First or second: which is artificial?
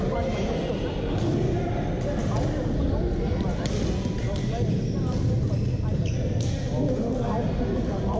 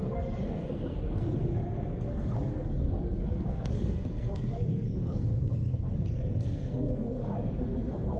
second